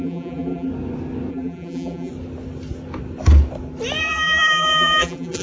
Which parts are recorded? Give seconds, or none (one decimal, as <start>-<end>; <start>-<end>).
0.7-1.3; 2.1-4.0